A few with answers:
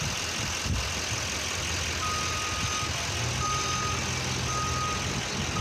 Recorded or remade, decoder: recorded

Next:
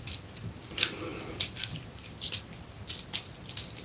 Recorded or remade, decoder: recorded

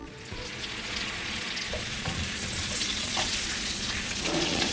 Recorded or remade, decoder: remade, vocoder, Vocos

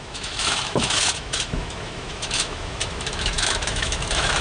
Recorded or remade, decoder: remade, autoencoder, DAC-VAE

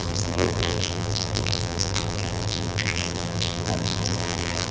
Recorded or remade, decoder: remade, vocoder, BigVGAN v2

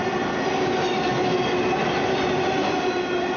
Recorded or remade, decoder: recorded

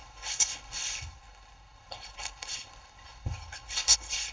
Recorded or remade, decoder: remade, codec, HILCodec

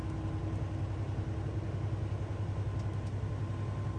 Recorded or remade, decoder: recorded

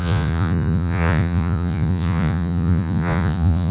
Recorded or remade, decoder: remade, vocoder, Vocos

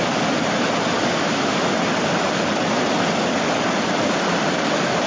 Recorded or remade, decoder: recorded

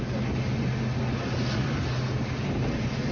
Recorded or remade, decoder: recorded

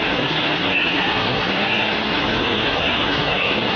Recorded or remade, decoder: remade, codec, SNAC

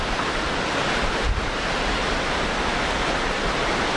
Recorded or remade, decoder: recorded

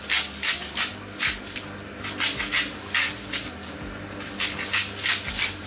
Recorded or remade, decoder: recorded